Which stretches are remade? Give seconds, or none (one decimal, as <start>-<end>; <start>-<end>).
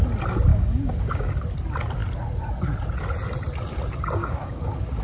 0.5-1.3; 4.2-5.0